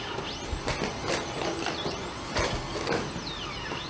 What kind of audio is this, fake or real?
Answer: real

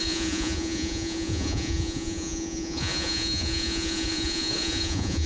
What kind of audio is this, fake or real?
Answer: fake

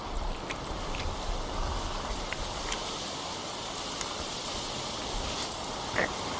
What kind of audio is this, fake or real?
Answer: real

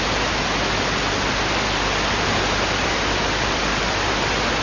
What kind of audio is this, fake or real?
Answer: real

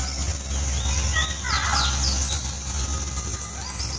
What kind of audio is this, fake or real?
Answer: real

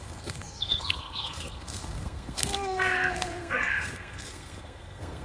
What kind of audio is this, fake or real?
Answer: fake